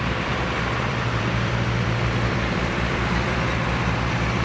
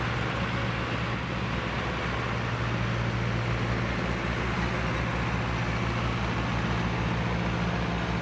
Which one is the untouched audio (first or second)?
second